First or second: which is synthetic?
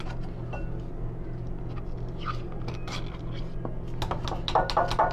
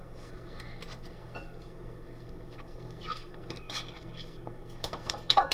second